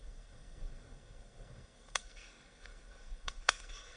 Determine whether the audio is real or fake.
fake